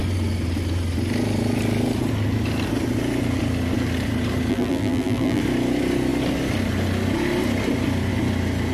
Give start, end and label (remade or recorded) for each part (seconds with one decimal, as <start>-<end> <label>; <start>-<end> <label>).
0.0-4.5 recorded; 4.5-5.4 remade; 5.4-8.7 recorded